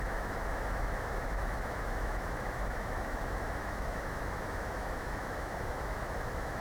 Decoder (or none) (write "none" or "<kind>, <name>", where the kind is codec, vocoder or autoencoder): autoencoder, DAC-VAE